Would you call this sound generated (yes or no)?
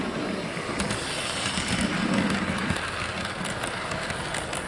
no